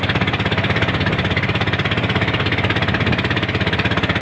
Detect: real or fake real